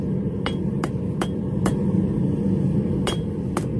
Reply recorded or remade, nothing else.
recorded